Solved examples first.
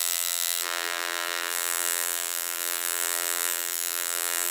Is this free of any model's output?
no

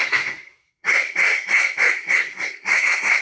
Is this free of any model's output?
no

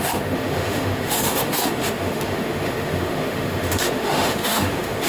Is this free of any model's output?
no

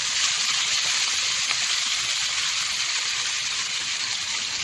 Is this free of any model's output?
no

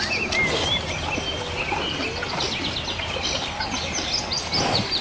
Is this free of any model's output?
yes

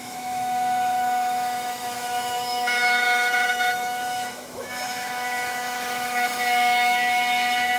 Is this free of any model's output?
no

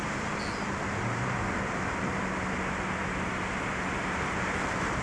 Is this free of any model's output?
yes